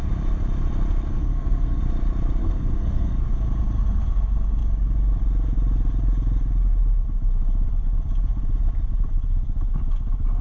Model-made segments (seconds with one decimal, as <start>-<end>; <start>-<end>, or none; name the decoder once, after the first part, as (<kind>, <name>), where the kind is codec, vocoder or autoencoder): 1.1-1.8 (codec, SNAC); 2.4-3.3